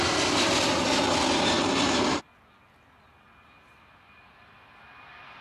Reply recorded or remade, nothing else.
recorded